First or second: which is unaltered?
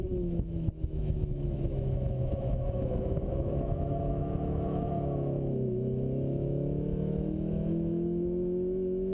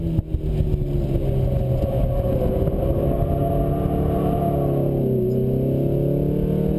second